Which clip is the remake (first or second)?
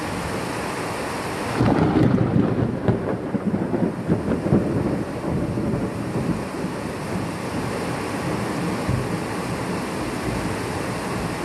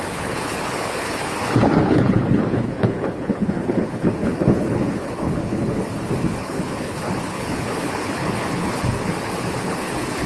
second